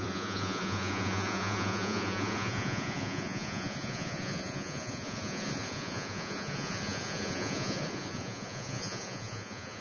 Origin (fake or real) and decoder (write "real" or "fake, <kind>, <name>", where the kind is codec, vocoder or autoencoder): fake, vocoder, Vocos